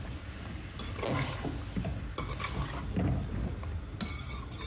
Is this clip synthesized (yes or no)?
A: no